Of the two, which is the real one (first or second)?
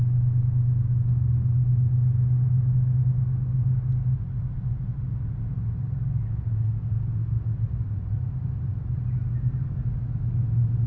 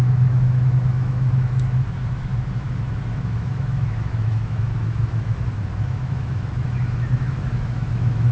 first